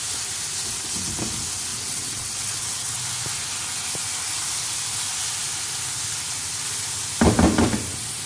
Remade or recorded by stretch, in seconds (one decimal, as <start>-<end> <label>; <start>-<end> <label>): 0.0-1.7 recorded; 1.7-3.0 remade; 3.0-8.3 recorded